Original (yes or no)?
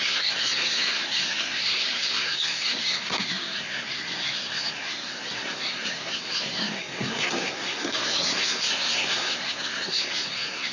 no